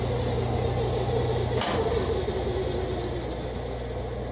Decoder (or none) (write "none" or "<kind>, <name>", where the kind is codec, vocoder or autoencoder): none